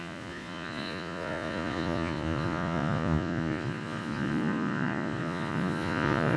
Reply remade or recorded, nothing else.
remade